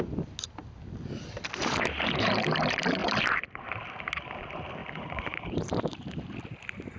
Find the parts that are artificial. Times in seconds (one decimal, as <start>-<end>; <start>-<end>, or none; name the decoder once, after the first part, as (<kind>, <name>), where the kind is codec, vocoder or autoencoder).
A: 4.8-5.8 (vocoder, BigVGAN v2)